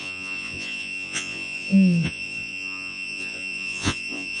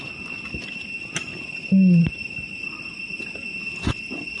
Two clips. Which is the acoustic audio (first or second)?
second